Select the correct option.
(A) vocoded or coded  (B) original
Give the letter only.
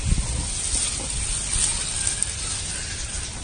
B